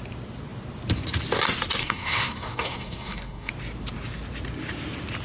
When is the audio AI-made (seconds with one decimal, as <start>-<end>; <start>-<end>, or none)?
1.8-3.5